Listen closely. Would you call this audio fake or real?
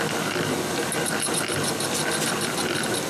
real